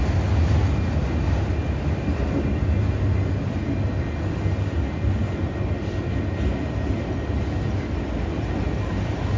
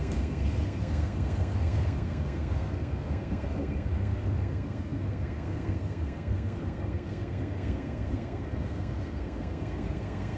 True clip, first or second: first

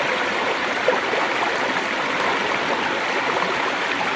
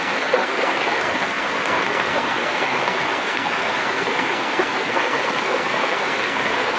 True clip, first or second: first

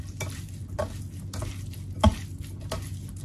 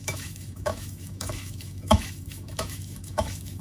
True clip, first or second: first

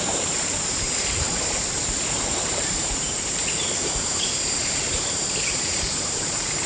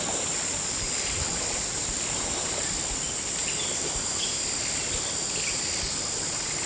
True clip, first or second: second